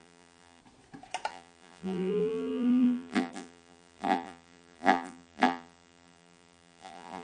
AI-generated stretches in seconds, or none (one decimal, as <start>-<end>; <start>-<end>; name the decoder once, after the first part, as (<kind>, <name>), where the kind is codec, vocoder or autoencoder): 0.0-0.6 (vocoder, BigVGAN v2); 1.3-7.2